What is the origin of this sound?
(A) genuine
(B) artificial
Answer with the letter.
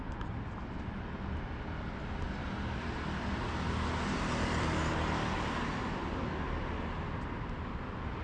A